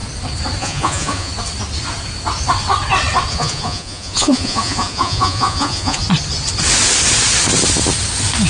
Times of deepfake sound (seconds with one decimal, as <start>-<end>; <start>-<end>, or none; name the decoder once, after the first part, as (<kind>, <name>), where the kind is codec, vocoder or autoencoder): 0.6-1.3 (vocoder, Vocos); 3.3-6.0